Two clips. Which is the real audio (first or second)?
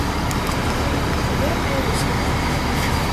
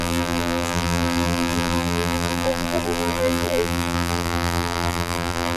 first